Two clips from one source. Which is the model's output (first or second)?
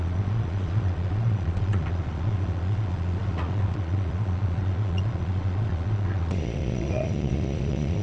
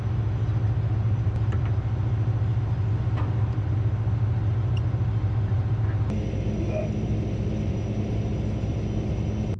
first